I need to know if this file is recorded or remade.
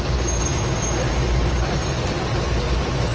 remade